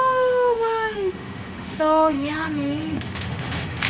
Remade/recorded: remade